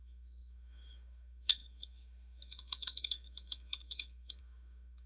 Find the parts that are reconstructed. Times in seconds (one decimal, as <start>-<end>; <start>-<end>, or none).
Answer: 0.0-5.1